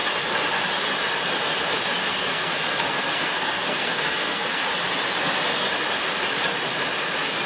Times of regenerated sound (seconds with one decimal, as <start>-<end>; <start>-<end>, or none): 2.1-4.6